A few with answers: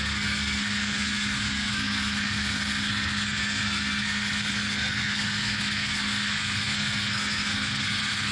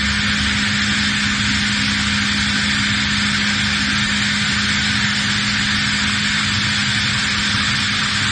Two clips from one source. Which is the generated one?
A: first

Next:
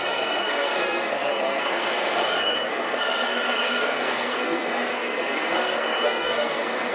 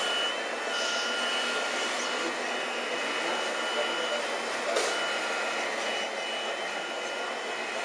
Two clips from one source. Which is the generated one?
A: first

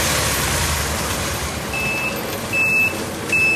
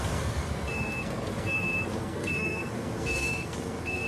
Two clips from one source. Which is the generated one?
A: second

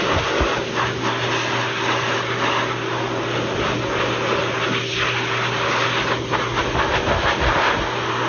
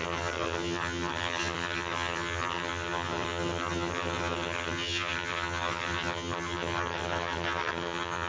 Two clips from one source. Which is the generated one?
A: second